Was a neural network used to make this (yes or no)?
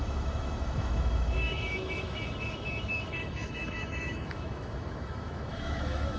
yes